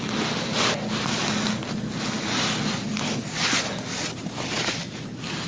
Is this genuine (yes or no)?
yes